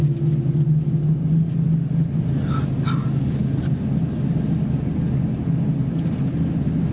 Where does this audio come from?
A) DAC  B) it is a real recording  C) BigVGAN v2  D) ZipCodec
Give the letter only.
B